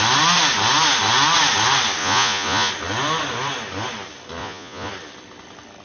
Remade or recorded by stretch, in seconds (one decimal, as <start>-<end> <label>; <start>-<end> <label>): 0.0-2.0 recorded; 2.0-2.7 remade; 2.7-4.4 recorded; 4.4-4.9 remade; 4.9-5.8 recorded